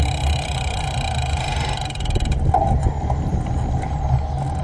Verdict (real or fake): real